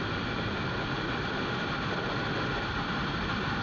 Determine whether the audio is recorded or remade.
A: recorded